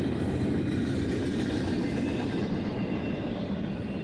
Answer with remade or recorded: recorded